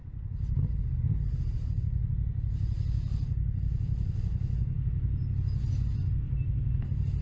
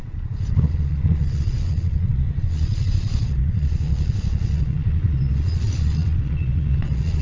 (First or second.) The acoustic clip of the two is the first